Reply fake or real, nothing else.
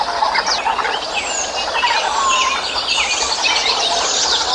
real